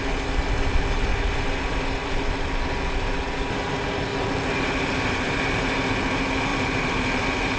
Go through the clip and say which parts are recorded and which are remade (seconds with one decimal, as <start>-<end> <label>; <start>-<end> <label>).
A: 0.0-2.0 recorded; 2.0-3.2 remade; 3.2-4.1 recorded; 4.1-5.9 remade; 5.9-6.5 recorded; 6.5-7.6 remade